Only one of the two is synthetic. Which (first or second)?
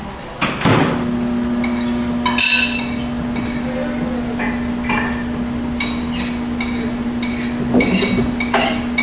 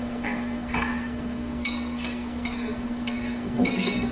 second